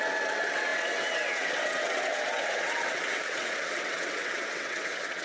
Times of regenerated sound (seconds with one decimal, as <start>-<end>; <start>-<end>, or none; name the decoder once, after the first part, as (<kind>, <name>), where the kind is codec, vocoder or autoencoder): 0.0-5.2 (vocoder, WaveNeXt)

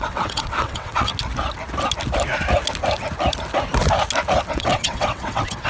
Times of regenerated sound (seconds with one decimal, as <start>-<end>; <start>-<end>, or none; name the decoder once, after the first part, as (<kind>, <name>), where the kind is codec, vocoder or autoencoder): 0.0-1.1 (vocoder, WaveNeXt); 4.5-5.7

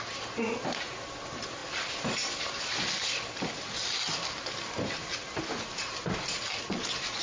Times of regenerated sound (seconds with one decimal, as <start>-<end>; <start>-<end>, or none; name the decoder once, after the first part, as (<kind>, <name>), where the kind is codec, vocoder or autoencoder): none

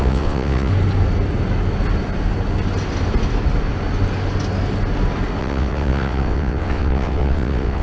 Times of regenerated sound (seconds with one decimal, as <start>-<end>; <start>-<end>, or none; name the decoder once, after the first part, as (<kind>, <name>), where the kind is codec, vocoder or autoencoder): 0.0-0.7 (vocoder, WaveNeXt); 5.4-7.8

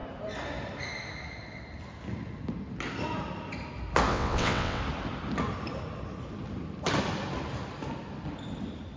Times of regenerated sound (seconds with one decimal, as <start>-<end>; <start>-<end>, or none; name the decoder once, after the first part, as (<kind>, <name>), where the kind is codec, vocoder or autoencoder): 4.1-4.8 (vocoder, WaveNeXt)

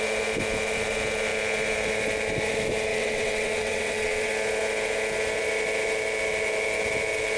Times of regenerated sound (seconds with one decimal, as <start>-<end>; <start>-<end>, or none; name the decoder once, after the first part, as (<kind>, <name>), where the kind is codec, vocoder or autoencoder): 2.9-4.3 (vocoder, WaveNeXt)